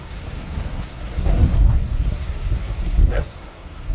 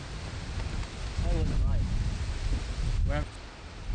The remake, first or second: first